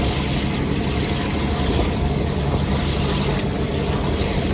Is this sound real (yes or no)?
yes